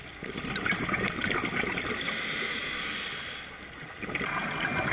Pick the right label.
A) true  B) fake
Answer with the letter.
A